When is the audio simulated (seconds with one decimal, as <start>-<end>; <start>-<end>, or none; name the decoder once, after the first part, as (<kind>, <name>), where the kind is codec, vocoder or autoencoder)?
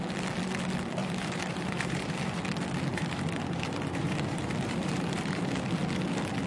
1.0-2.4 (vocoder, BigVGAN v2); 2.9-5.4